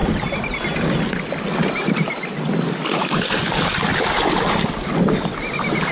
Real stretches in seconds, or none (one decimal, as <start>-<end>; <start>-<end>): 0.0-5.9